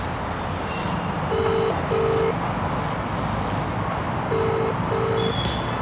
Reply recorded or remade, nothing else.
recorded